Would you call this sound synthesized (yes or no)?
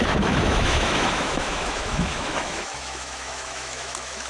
yes